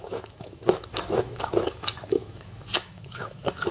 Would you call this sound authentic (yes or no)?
no